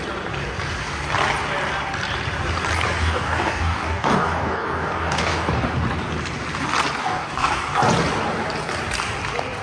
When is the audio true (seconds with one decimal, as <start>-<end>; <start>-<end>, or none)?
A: 0.0-3.0; 5.5-7.0; 7.6-9.6